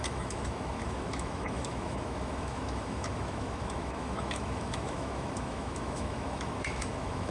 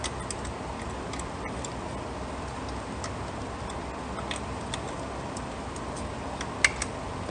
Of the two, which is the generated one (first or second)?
first